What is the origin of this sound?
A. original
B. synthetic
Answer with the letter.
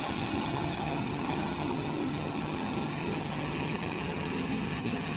B